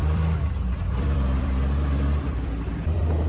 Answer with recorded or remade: remade